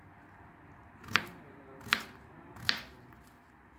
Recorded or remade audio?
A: recorded